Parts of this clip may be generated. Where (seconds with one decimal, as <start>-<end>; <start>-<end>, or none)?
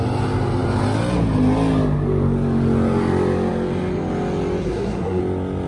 4.6-5.2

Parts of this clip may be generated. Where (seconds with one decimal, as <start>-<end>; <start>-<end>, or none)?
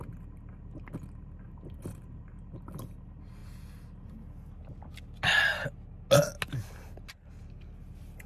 none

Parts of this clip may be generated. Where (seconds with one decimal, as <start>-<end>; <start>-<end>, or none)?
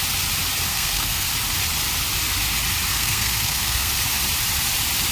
0.7-1.3; 2.9-3.9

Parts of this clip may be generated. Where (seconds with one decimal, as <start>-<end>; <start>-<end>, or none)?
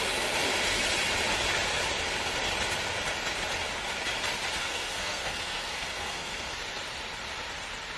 4.6-6.5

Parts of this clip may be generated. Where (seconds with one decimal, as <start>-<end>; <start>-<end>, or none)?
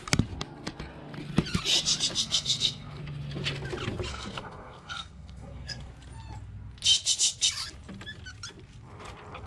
2.2-3.0; 4.1-5.9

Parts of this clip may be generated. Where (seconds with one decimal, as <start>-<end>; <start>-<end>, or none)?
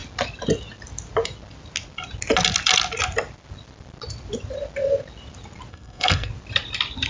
5.7-6.3